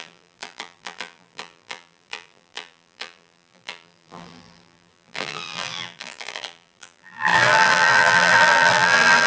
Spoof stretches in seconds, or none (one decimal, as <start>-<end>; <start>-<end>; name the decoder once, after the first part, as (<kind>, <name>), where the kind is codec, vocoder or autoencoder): 0.0-9.3 (vocoder, BigVGAN v2)